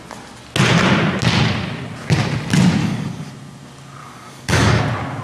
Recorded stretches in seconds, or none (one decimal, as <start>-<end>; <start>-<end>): 0.0-2.8; 3.3-4.0; 4.8-5.2